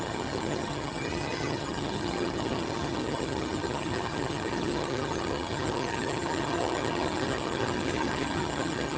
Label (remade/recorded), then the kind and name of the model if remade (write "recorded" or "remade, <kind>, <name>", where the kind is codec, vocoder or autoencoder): remade, vocoder, HiFi-GAN